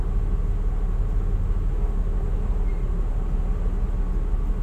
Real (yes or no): yes